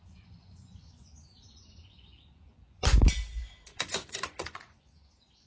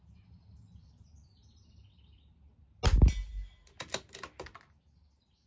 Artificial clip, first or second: first